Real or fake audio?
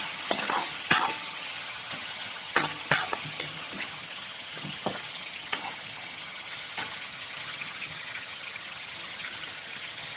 fake